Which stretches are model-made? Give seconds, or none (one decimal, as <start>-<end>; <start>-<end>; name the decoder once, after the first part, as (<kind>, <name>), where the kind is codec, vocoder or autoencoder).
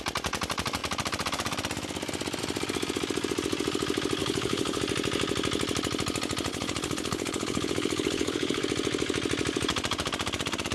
4.2-4.8 (codec, HILCodec); 6.5-8.6